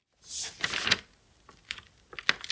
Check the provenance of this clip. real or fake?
real